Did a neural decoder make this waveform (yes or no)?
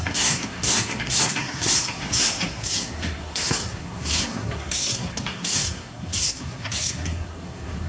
yes